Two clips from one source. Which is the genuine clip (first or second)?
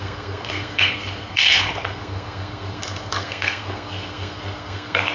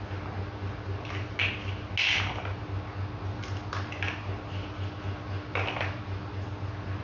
second